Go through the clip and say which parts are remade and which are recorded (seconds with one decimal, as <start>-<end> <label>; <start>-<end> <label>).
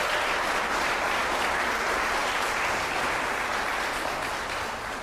0.0-2.2 remade; 2.2-3.1 recorded; 3.1-3.5 remade; 3.5-4.3 recorded; 4.3-5.0 remade